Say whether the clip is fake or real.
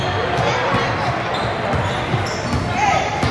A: real